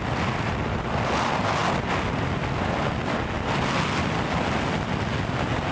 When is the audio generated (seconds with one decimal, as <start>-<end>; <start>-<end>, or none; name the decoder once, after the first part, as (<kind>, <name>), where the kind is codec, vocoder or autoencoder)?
none